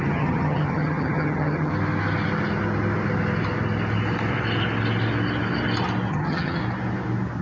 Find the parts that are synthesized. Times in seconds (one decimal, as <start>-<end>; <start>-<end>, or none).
0.0-1.7; 6.1-6.6